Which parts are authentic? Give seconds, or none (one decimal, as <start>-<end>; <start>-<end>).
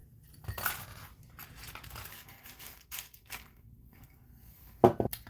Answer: 0.0-2.1; 4.8-5.3